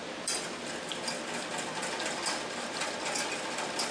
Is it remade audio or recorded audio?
recorded